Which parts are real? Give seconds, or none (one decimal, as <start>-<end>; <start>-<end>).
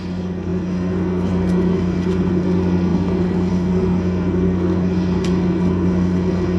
none